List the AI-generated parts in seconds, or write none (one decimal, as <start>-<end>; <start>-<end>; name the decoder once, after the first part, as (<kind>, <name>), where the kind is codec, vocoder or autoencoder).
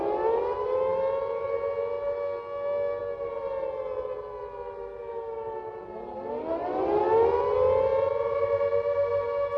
6.5-7.0 (vocoder, BigVGAN v2)